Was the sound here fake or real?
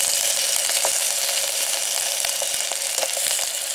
real